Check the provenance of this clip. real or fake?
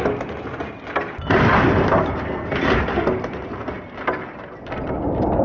real